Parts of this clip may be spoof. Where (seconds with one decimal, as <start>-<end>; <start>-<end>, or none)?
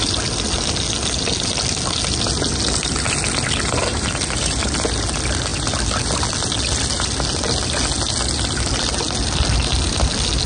none